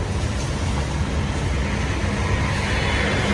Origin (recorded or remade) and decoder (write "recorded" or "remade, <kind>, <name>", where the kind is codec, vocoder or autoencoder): recorded